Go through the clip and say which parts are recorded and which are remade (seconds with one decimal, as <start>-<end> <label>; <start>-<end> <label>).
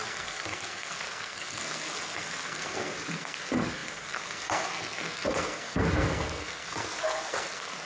0.0-7.9 remade